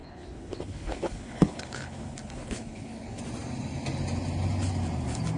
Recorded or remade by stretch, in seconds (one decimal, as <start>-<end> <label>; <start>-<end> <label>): 0.0-3.2 remade; 3.2-5.4 recorded